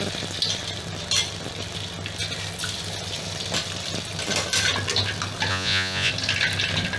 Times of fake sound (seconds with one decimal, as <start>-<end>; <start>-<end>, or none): 5.5-6.1